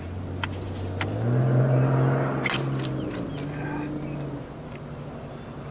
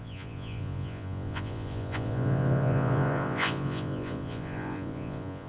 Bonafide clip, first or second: first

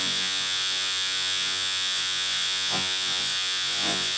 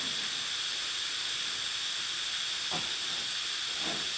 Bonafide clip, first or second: second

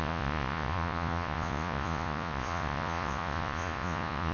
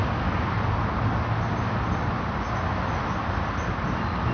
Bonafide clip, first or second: second